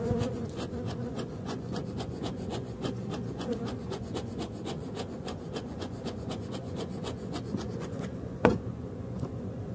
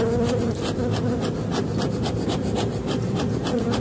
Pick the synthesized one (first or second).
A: first